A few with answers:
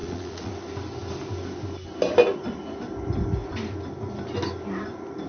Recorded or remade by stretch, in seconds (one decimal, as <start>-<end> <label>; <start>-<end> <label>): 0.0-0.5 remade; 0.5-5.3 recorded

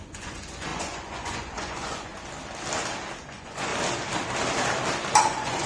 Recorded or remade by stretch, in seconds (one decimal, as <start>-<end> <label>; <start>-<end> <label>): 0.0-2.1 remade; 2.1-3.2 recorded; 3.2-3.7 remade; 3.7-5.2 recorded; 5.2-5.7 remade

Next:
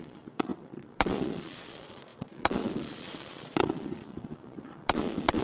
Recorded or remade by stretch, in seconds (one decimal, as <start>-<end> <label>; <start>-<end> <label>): 0.0-5.4 remade

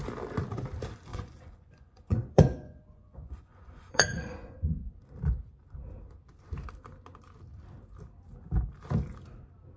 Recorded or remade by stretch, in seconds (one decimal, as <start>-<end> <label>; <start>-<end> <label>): 0.0-1.1 recorded; 1.1-4.9 remade; 4.9-9.8 recorded

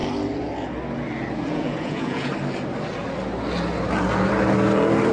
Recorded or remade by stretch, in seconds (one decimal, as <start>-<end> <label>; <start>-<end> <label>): 0.0-1.5 recorded; 1.5-2.3 remade; 2.3-5.1 recorded

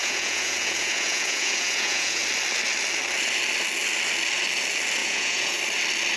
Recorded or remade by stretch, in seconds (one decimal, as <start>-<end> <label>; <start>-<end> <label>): 0.0-2.2 remade; 2.2-5.0 recorded; 5.0-5.6 remade; 5.6-6.2 recorded